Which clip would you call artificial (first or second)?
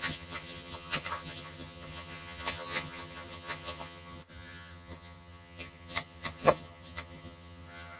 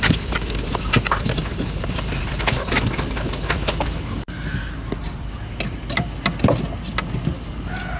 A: first